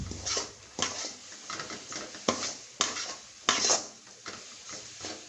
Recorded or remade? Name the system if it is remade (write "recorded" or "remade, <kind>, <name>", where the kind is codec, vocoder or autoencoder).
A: recorded